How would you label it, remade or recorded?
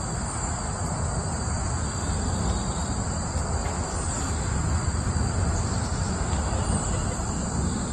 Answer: recorded